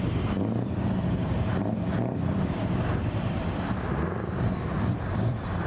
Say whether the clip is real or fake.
fake